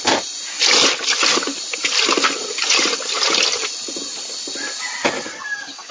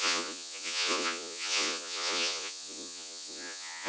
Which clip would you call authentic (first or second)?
first